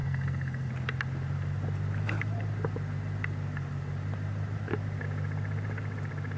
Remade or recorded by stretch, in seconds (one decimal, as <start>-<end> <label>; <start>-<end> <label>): 0.0-0.7 remade; 0.7-6.4 recorded